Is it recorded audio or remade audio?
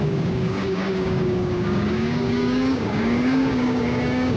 remade